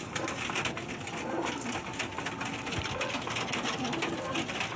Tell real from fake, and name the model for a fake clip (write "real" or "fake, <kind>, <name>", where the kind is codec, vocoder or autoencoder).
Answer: real